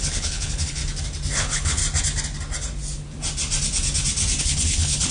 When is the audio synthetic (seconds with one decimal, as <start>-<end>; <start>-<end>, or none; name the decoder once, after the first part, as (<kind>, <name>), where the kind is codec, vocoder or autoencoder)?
0.0-0.8 (codec, HILCodec); 1.3-1.8; 4.4-5.1